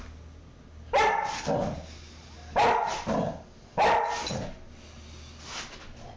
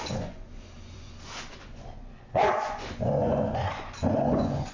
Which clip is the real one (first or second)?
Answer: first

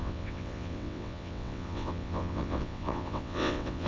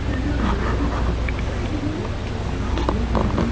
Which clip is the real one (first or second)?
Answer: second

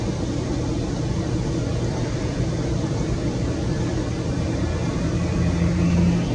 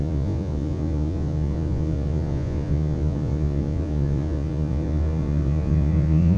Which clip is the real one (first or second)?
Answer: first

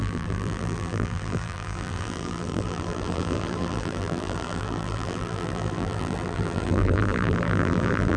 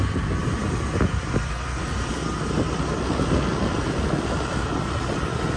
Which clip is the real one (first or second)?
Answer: second